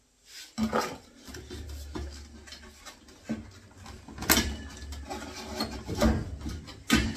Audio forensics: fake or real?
real